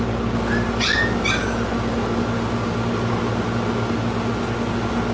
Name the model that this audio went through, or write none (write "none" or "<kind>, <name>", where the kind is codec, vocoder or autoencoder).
none